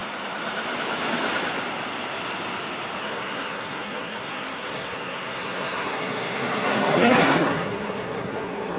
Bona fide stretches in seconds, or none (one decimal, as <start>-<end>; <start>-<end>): 0.0-3.0